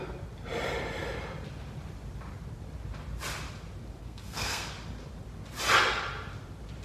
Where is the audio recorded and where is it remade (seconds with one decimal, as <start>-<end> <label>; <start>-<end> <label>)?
0.0-4.0 recorded; 4.0-4.7 remade; 4.7-6.8 recorded